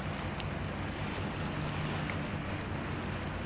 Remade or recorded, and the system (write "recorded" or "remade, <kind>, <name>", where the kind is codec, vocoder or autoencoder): recorded